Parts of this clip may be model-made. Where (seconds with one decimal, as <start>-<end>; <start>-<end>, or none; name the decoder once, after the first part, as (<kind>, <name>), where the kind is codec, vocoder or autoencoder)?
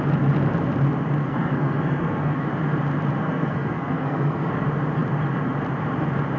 1.2-2.5 (codec, SNAC); 3.2-4.5